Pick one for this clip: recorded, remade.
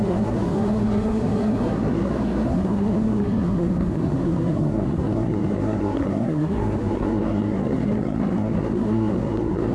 remade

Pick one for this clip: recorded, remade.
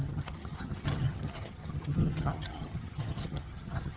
remade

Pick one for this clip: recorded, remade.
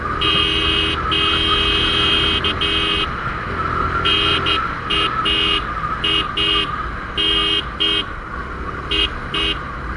recorded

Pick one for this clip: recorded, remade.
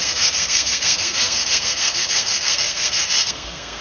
remade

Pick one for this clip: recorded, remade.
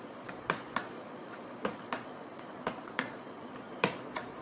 remade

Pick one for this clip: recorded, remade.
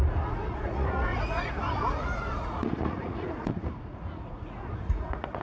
remade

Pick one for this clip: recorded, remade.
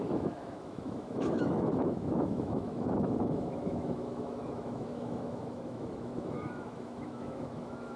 remade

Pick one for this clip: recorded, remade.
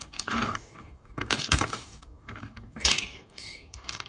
remade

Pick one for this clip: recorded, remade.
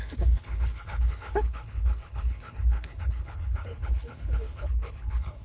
remade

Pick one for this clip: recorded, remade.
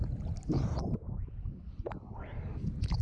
recorded